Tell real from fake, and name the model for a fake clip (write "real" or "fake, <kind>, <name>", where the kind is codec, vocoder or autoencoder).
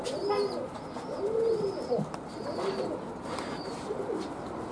real